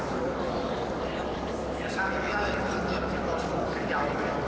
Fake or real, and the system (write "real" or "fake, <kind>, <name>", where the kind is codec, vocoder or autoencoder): fake, codec, DAC